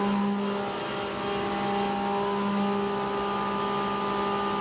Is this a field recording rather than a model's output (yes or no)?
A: yes